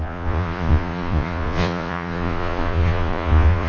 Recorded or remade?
remade